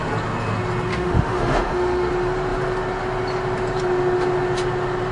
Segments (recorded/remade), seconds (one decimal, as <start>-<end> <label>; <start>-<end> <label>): 0.0-0.9 recorded; 0.9-2.1 remade; 2.1-5.1 recorded

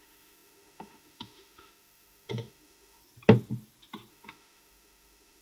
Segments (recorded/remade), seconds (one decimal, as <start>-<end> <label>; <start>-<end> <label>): 0.0-3.0 remade; 3.0-4.1 recorded; 4.1-5.4 remade

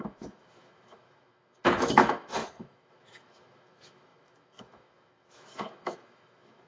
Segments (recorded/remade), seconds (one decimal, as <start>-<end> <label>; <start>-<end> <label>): 0.0-6.7 remade

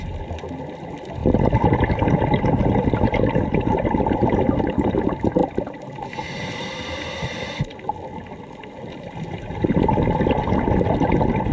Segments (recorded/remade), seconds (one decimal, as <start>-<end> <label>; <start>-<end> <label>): 0.0-11.5 recorded